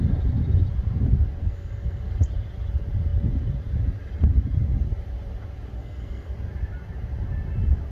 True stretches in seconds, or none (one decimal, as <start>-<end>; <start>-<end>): 0.0-1.4; 2.1-5.8; 6.3-7.9